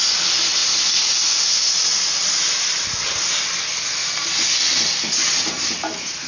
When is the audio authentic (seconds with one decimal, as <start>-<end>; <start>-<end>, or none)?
0.0-6.3